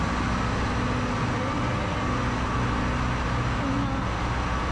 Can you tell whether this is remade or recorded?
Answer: recorded